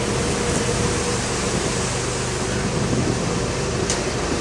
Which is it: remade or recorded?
recorded